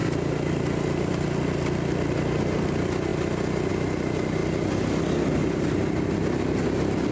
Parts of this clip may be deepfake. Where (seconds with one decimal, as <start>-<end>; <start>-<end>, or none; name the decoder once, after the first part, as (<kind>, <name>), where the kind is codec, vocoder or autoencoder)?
none